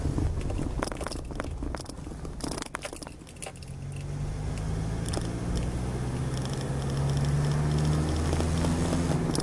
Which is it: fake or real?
real